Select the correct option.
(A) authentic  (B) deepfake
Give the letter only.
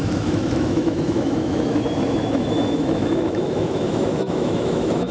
B